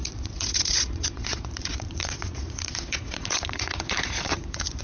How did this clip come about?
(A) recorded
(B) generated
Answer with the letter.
B